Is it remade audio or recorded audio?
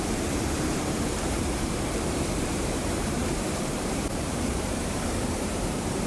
remade